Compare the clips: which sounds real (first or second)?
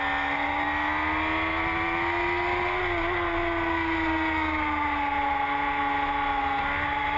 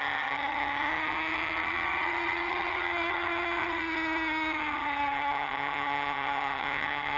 first